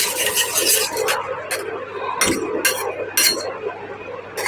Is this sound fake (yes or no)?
no